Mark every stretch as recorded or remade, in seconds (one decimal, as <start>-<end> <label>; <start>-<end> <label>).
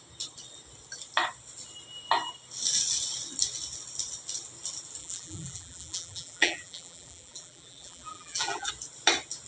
0.0-5.0 recorded; 5.0-8.7 remade; 8.7-9.5 recorded